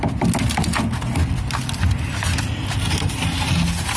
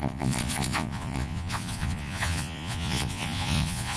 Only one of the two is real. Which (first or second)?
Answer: first